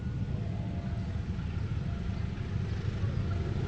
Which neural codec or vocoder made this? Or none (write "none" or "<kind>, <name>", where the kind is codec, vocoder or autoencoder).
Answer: none